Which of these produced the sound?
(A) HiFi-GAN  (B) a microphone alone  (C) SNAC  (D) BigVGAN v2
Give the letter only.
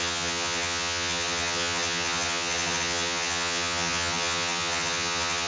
A